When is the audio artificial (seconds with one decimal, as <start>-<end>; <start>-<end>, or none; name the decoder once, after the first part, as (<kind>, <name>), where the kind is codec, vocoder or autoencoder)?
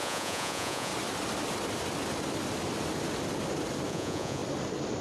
0.0-0.9 (vocoder, Vocos); 3.9-4.4